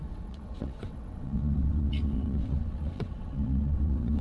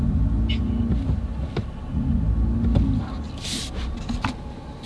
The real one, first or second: second